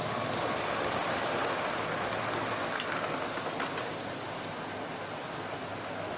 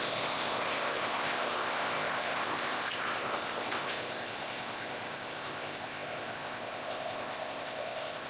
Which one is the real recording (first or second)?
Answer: first